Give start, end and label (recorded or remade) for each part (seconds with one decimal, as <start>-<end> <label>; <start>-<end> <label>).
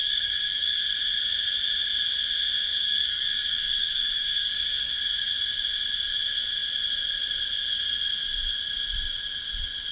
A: 0.0-0.8 remade; 0.8-2.7 recorded; 2.7-5.0 remade; 5.0-9.9 recorded